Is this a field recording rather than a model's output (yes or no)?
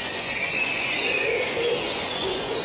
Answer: no